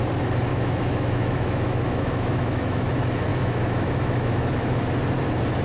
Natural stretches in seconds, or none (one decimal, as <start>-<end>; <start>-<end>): 0.0-0.5; 2.9-3.3; 4.9-5.6